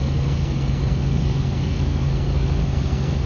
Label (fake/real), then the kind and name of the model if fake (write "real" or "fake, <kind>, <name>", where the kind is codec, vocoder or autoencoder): fake, codec, SNAC